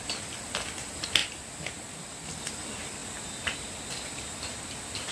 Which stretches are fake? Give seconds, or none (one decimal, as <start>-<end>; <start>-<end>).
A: 0.0-1.2; 2.4-3.0; 3.7-5.1